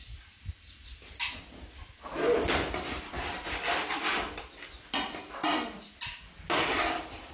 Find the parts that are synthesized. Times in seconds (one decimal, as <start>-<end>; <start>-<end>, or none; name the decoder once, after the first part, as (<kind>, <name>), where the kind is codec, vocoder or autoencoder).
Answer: none